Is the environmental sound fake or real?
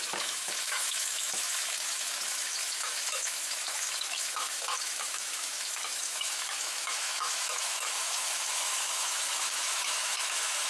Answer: fake